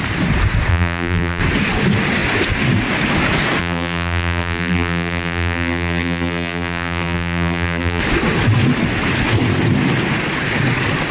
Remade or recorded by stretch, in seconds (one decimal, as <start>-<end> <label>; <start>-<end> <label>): 0.0-0.7 recorded; 0.7-1.4 remade; 1.4-3.6 recorded; 3.6-8.0 remade; 8.0-11.1 recorded